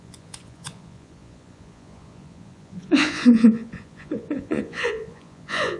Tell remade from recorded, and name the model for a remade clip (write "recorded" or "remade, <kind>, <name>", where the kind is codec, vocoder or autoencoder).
remade, vocoder, Vocos